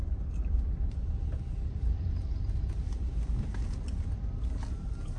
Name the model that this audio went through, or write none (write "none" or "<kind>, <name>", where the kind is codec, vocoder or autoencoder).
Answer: none